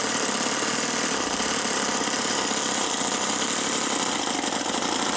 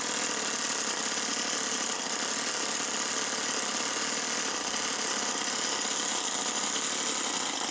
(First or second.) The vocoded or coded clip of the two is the first